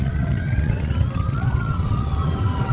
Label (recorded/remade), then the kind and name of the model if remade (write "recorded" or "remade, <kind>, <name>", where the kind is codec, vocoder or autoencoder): remade, vocoder, WaveNeXt